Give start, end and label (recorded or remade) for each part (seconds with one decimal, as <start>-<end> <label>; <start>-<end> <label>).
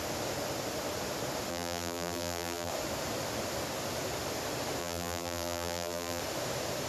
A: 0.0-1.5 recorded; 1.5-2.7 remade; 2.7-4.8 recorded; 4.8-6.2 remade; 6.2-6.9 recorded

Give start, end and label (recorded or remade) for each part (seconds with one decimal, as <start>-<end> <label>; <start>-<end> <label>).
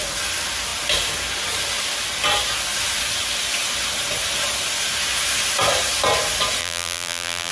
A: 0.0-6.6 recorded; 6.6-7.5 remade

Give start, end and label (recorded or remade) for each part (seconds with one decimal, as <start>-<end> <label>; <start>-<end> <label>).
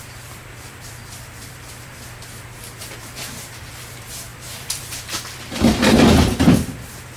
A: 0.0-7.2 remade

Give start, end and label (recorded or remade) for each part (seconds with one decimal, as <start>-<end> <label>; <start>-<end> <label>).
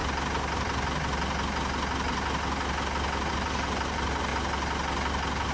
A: 0.0-3.3 recorded; 3.3-4.3 remade; 4.3-5.5 recorded